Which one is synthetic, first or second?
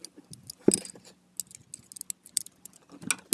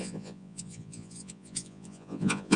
second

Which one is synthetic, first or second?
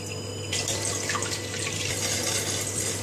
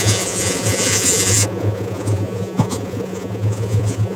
second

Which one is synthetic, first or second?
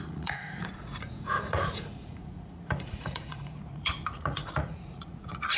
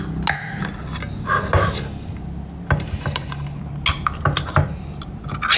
first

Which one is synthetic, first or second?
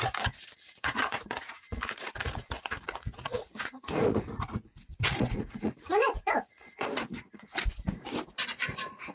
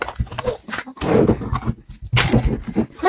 first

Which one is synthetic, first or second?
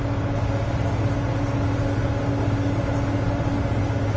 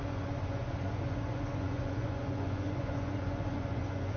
second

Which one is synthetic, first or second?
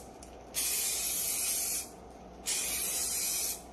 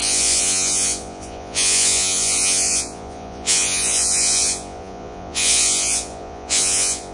second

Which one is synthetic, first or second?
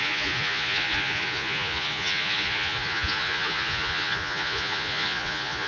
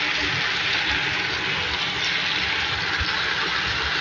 first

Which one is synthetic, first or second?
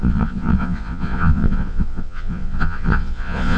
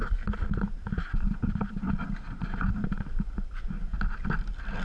first